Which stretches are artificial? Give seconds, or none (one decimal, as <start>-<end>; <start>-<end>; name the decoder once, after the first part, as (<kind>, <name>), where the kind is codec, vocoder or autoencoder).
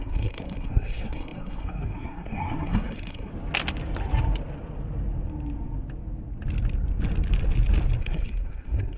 0.0-3.3 (codec, SNAC); 8.0-9.0